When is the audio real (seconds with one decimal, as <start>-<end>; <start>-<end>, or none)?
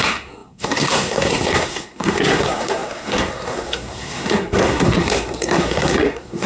none